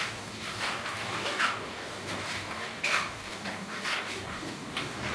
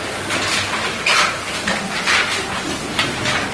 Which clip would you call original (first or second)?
second